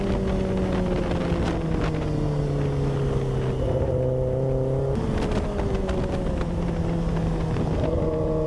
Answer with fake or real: real